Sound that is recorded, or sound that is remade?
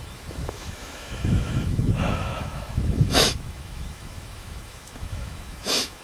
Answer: remade